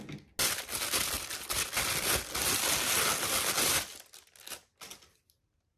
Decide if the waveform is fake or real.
real